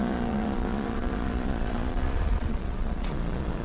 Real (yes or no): no